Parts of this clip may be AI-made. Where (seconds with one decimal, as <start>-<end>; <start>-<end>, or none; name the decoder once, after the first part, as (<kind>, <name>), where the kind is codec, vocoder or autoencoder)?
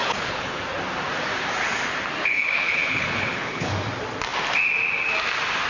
0.0-0.6 (codec, HILCodec); 2.2-3.7